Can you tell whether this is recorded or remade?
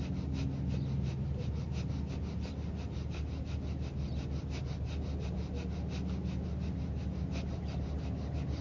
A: recorded